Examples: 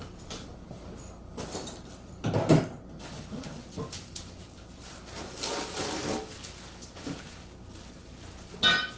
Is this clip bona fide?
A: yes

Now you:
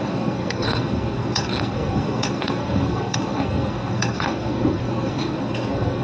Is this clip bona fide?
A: no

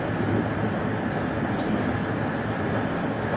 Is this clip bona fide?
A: yes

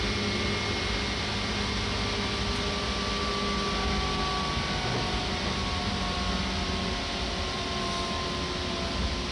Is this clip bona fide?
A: yes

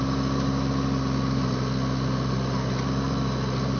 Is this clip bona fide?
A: yes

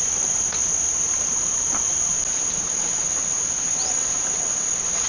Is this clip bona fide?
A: yes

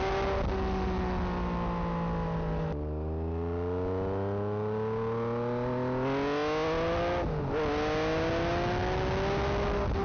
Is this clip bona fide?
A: yes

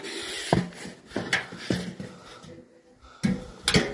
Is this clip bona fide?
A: yes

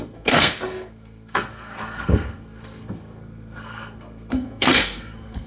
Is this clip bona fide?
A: no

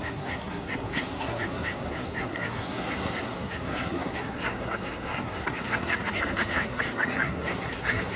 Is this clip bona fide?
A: no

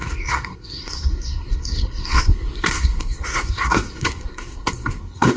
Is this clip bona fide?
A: no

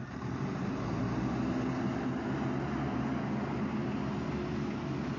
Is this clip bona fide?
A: yes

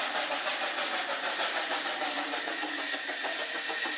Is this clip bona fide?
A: yes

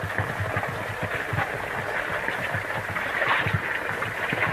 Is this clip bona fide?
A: yes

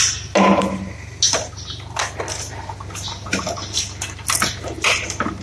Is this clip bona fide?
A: yes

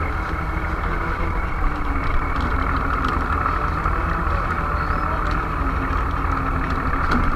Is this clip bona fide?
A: yes